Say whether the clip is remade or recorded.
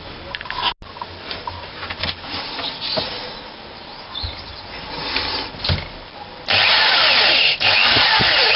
recorded